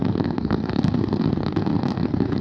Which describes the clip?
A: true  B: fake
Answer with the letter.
B